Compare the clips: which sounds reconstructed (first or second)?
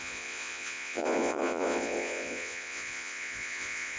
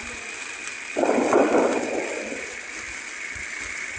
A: first